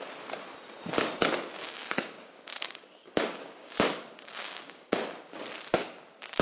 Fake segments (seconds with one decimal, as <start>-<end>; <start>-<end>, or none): 1.6-5.4